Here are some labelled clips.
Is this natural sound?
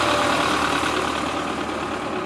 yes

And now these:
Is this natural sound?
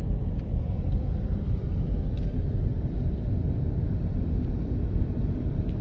no